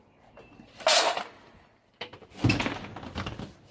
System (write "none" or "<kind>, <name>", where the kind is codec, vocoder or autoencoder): none